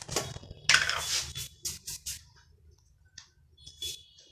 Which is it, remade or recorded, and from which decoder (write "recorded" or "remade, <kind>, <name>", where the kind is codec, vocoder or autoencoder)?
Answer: recorded